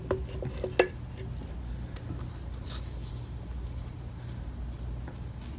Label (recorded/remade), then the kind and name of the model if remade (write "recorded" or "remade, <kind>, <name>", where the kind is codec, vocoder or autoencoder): recorded